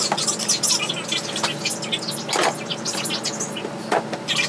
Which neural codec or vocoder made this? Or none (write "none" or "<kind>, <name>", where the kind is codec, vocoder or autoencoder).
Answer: none